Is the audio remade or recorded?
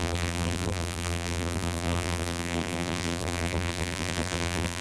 remade